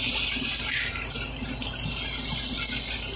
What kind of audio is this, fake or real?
real